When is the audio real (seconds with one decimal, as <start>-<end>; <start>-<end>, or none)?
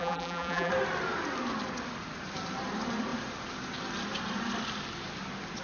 0.7-5.6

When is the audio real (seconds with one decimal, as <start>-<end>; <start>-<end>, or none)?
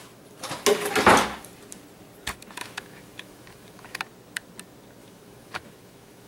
0.0-2.6; 4.0-5.0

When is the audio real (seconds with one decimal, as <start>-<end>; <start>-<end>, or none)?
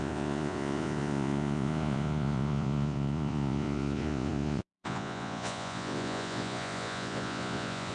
none